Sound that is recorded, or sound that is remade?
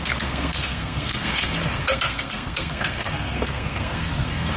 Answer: remade